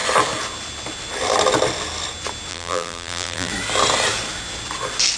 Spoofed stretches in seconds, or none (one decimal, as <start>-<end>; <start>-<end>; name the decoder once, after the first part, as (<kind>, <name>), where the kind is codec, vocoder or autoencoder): 2.5-3.5 (vocoder, BigVGAN v2)